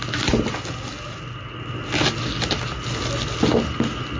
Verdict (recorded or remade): recorded